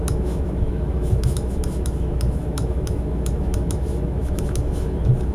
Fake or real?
fake